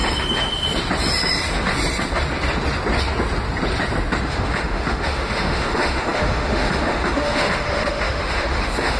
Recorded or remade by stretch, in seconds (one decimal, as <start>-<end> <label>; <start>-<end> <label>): 0.0-4.2 recorded; 4.2-9.0 remade